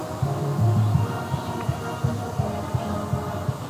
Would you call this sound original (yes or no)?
yes